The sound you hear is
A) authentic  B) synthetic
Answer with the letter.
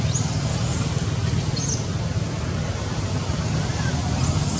A